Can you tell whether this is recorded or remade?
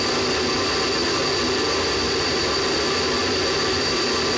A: recorded